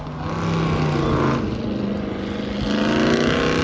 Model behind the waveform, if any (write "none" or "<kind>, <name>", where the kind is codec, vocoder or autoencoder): none